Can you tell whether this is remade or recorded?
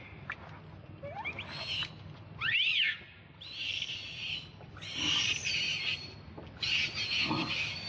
recorded